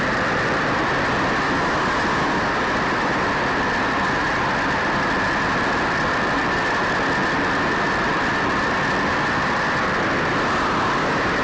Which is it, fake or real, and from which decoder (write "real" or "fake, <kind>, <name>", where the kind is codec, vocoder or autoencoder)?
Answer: real